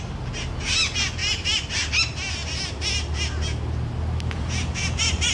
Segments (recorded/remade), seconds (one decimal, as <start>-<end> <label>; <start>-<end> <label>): 0.0-5.3 recorded